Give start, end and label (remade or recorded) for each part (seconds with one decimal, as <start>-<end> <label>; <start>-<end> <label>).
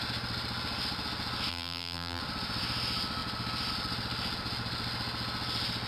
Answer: 0.0-1.5 recorded; 1.5-2.2 remade; 2.2-5.9 recorded